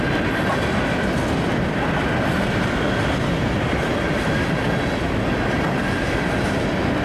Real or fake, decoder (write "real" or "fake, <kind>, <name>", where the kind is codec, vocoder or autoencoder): real